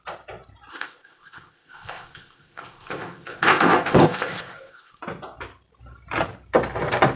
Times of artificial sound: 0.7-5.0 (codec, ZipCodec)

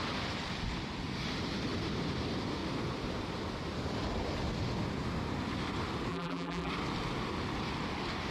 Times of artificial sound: 6.1-6.7 (vocoder, BigVGAN v2)

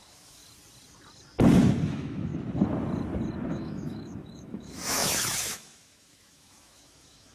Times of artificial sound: 0.0-0.4 (autoencoder, DAC-VAE); 1.9-2.3; 3.5-7.3

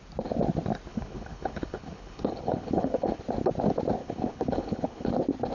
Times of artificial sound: 0.9-3.2 (codec, HILCodec); 4.0-5.1

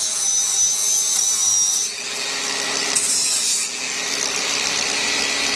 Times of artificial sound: none

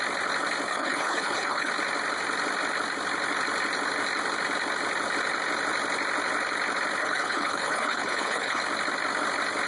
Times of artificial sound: 0.7-1.7 (codec, HILCodec); 7.0-8.6